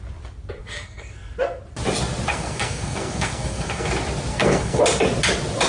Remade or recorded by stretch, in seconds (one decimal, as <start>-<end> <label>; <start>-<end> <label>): 0.0-0.6 recorded; 0.6-1.6 remade; 1.6-2.3 recorded; 2.3-3.9 remade; 3.9-4.3 recorded; 4.3-4.8 remade; 4.8-5.7 recorded